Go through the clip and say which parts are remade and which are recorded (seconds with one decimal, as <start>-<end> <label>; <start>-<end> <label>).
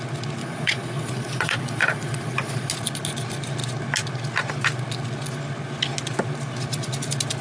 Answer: 0.0-0.4 recorded; 0.4-2.7 remade; 2.7-7.4 recorded